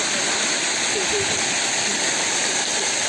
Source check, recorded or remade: recorded